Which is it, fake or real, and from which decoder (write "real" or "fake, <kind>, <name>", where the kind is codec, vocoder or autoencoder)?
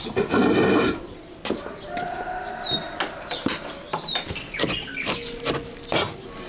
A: real